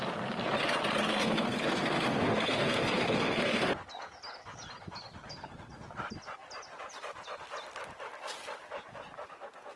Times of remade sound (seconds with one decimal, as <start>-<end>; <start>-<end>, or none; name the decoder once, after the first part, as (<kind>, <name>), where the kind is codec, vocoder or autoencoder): 1.1-3.7 (codec, SNAC)